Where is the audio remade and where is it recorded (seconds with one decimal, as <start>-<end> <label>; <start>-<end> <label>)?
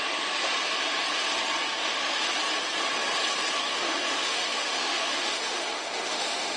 0.0-1.8 recorded; 1.8-2.3 remade; 2.3-3.6 recorded; 3.6-6.6 remade